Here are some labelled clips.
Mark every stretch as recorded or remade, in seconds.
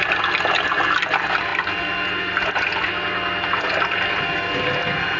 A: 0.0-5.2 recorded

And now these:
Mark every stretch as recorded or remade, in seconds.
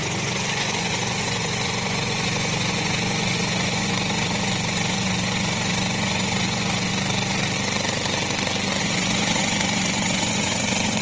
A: 0.0-6.9 remade; 6.9-8.8 recorded; 8.8-11.0 remade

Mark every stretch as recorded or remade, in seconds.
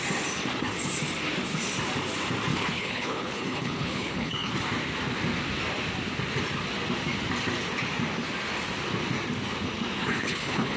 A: 0.0-2.5 recorded; 2.5-4.5 remade; 4.5-10.0 recorded; 10.0-10.8 remade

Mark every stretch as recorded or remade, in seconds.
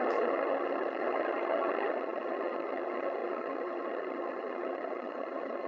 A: 0.0-5.7 remade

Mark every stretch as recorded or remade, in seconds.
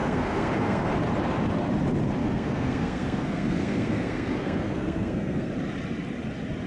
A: 0.0-0.9 remade; 0.9-2.2 recorded; 2.2-5.5 remade; 5.5-6.7 recorded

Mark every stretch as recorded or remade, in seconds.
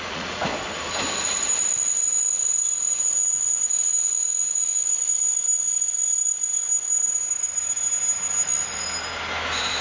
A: 0.0-0.5 remade; 0.5-2.5 recorded; 2.5-4.7 remade; 4.7-9.8 recorded